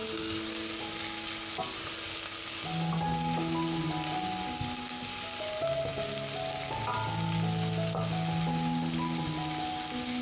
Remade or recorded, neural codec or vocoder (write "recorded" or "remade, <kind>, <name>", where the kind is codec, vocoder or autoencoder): recorded